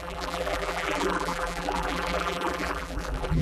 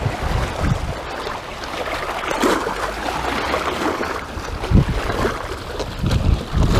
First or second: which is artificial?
first